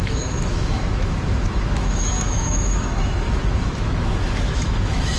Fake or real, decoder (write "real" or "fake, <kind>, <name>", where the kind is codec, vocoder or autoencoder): fake, autoencoder, DAC-VAE